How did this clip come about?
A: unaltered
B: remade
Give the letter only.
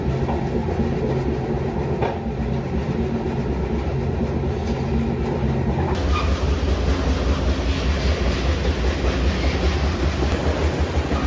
A